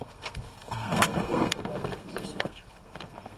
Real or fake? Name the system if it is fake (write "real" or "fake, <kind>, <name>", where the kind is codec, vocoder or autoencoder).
fake, codec, SNAC